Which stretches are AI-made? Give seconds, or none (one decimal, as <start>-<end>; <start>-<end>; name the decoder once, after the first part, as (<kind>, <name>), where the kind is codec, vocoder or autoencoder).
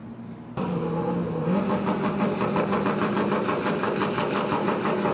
none